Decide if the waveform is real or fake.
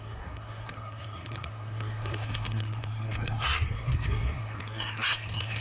fake